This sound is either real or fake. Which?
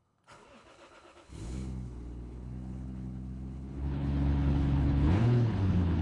fake